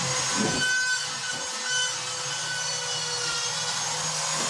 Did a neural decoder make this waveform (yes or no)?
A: no